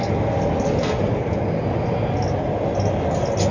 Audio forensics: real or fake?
real